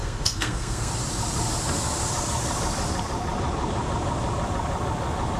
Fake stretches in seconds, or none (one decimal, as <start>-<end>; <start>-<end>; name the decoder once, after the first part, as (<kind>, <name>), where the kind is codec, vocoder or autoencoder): 0.0-0.9 (codec, SNAC)